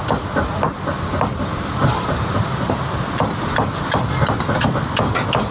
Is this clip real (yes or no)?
yes